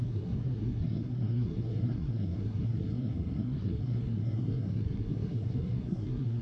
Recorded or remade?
remade